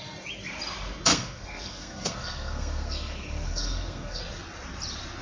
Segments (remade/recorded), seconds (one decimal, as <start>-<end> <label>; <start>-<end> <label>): 0.0-1.1 recorded; 1.1-4.2 remade; 4.2-5.2 recorded